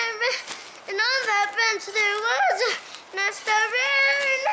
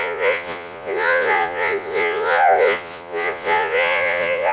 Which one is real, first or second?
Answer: first